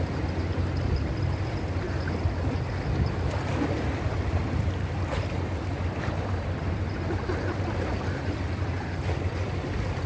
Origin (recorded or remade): recorded